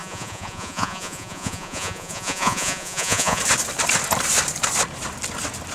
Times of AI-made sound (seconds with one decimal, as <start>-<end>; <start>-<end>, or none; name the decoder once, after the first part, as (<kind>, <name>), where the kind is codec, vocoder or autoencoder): 0.0-3.4 (vocoder, Vocos)